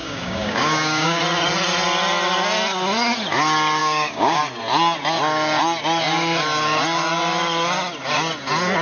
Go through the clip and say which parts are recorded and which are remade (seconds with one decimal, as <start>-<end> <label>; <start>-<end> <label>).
0.0-1.2 remade; 1.2-3.8 recorded; 3.8-4.4 remade; 4.4-8.8 recorded